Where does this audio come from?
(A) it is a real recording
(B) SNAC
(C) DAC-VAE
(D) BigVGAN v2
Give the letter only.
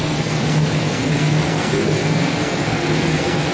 B